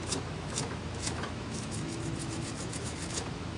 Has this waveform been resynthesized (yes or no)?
yes